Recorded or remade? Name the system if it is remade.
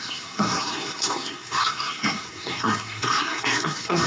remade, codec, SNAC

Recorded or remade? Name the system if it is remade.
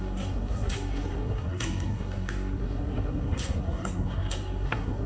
remade, codec, SNAC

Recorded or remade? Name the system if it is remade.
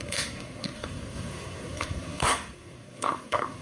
remade, codec, SNAC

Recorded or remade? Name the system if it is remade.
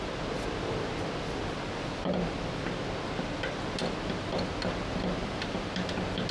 recorded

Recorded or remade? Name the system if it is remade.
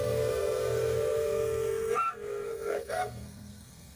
remade, codec, SNAC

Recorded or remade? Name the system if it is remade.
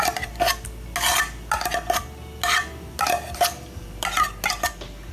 recorded